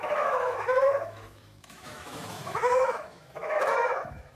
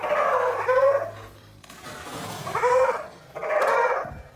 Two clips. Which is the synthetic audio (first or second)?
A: first